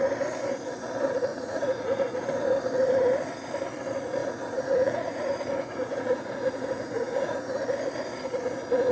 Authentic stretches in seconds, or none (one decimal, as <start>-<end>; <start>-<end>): 0.0-1.3; 2.3-4.2; 7.6-8.9